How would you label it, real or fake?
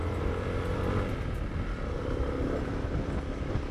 real